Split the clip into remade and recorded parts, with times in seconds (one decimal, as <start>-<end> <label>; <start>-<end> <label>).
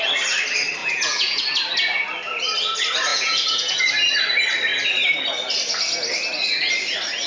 0.0-0.8 recorded; 0.8-1.4 remade; 1.4-3.1 recorded; 3.1-3.8 remade; 3.8-7.3 recorded